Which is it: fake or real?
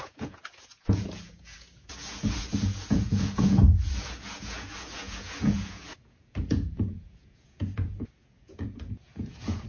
fake